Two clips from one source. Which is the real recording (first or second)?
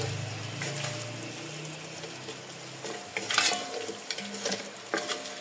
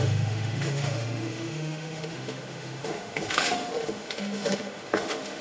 first